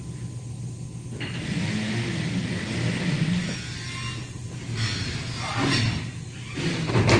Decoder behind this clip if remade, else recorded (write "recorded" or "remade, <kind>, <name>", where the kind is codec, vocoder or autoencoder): recorded